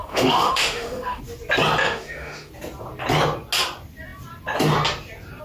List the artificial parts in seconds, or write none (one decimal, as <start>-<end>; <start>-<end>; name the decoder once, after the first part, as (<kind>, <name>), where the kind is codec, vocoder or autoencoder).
0.0-1.2 (autoencoder, DAC-VAE); 1.8-2.5